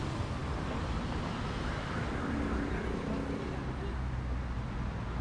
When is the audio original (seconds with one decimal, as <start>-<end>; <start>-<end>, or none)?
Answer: 0.0-5.2